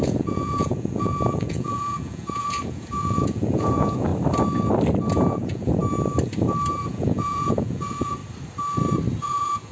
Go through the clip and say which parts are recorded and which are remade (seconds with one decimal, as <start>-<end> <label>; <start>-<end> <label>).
0.0-4.1 remade; 4.1-5.1 recorded; 5.1-5.8 remade; 5.8-6.7 recorded; 6.7-8.2 remade; 8.2-9.2 recorded; 9.2-9.7 remade